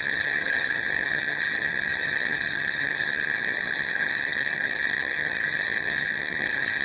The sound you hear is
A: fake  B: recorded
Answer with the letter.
A